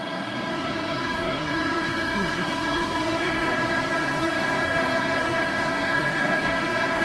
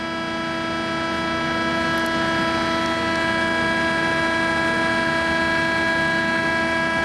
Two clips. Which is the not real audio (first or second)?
first